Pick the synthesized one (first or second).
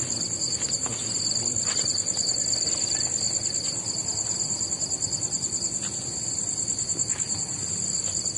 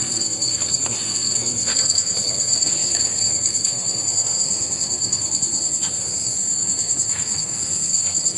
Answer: second